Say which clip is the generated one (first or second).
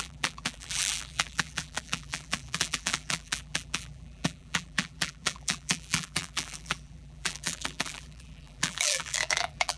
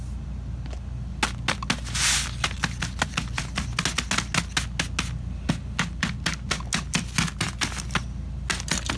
first